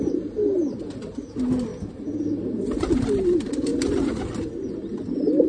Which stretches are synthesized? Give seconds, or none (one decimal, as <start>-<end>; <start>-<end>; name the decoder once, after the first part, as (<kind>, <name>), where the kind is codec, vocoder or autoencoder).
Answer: none